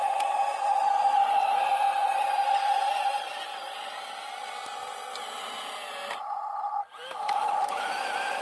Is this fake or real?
real